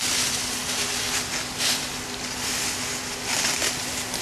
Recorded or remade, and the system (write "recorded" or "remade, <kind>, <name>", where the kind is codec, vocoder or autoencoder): recorded